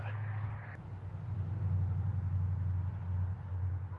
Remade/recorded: recorded